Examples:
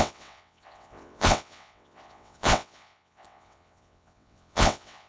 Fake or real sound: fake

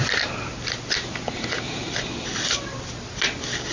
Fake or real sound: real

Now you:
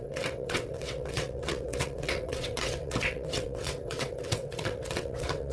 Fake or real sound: fake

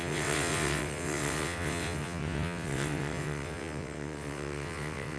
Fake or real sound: fake